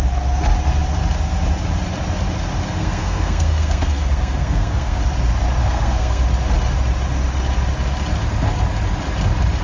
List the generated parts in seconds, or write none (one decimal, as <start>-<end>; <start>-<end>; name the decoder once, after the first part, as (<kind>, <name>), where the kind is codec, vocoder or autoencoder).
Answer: 2.8-5.0 (codec, SNAC); 5.6-6.2